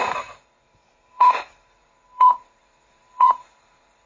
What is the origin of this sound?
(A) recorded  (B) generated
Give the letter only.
B